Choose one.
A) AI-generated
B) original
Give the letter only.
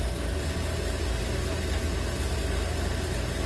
B